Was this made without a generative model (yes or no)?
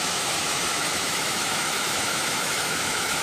no